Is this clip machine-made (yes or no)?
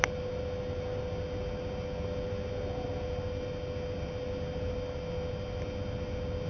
no